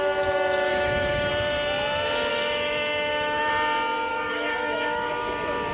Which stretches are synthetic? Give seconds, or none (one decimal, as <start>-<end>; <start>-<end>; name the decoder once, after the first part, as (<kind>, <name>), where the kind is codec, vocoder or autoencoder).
0.7-1.3 (autoencoder, DAC-VAE); 2.3-3.5; 4.1-5.1